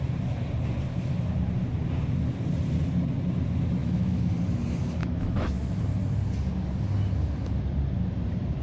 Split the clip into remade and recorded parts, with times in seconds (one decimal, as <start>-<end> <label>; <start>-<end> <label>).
0.0-3.8 recorded; 3.8-4.3 remade; 4.3-5.0 recorded; 5.0-5.8 remade; 5.8-8.6 recorded